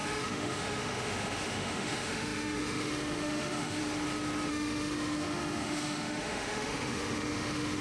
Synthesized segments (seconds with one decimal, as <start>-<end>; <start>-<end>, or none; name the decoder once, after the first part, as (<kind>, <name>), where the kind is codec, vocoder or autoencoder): 0.0-3.8 (autoencoder, DAC-VAE); 4.5-7.8